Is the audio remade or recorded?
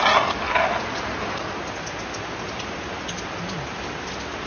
recorded